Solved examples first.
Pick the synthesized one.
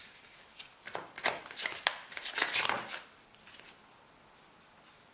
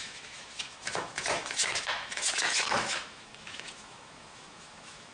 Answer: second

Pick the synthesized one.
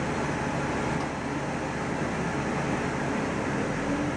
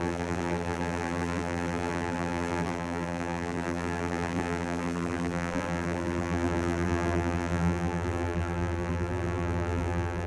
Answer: second